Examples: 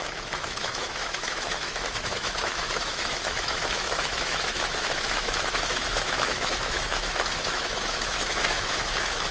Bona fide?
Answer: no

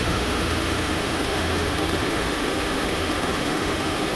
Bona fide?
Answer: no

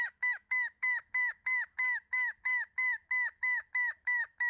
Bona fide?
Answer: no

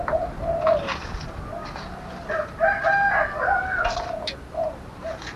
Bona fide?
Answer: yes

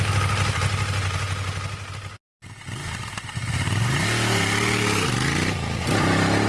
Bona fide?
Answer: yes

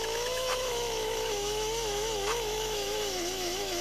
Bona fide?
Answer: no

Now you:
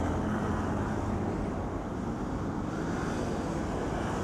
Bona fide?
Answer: yes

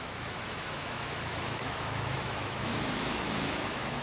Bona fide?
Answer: no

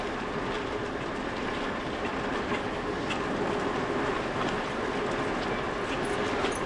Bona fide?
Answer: yes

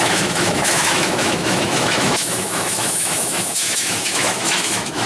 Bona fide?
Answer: no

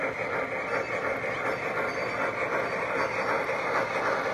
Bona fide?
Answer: yes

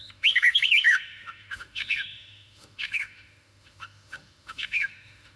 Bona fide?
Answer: no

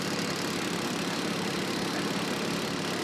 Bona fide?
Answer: yes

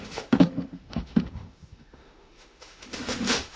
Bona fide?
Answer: no